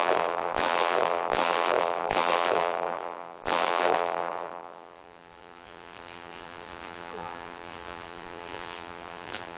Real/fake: fake